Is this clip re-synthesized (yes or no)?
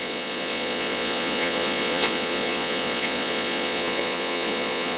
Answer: yes